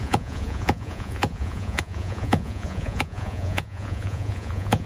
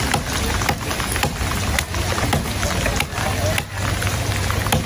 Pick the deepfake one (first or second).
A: first